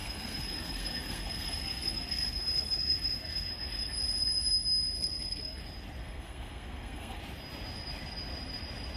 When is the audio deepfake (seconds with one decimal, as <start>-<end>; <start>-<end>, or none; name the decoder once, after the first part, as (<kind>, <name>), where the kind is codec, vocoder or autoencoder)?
0.0-3.5 (codec, SNAC); 5.0-5.6; 6.0-7.2

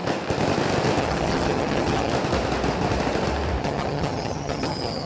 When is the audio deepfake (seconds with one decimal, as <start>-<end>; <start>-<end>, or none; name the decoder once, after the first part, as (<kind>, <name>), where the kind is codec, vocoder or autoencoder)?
1.0-2.1 (vocoder, HiFi-GAN); 3.6-5.1